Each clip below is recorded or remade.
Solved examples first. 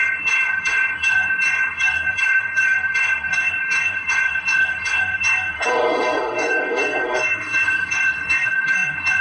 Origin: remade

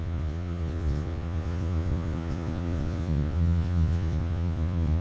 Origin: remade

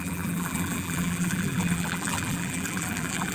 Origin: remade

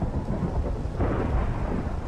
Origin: recorded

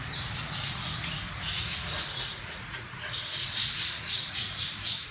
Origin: remade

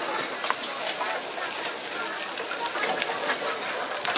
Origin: recorded